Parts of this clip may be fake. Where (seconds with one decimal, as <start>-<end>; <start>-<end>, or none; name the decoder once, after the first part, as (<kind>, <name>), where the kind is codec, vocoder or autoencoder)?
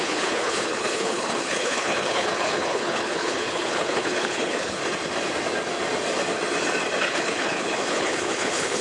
0.0-4.8 (codec, HILCodec); 7.0-8.8